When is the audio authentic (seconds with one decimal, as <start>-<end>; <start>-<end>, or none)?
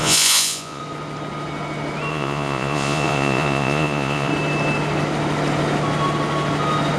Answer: 0.8-2.1; 4.3-7.0